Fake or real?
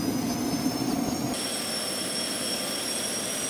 real